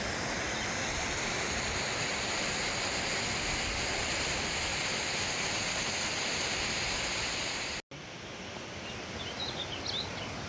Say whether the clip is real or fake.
real